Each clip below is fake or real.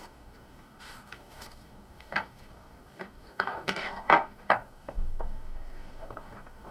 fake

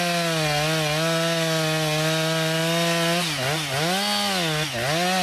real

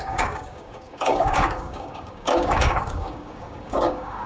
fake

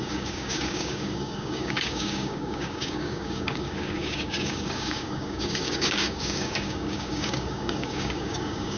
fake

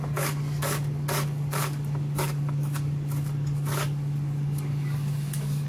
fake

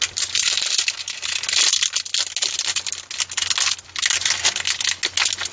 real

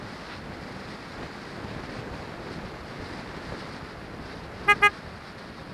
real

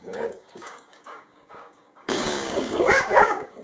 fake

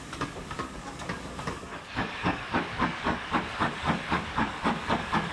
fake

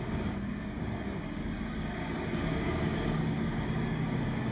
fake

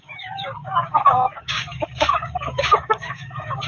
fake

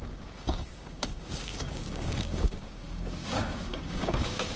fake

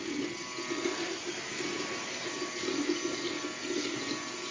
real